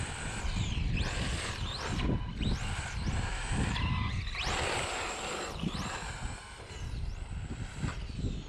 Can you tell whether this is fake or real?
real